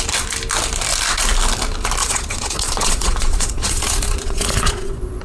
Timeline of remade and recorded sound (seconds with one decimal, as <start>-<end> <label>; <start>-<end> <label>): 0.0-2.0 recorded; 2.0-5.2 remade